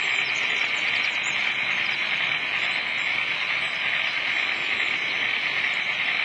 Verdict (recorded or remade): recorded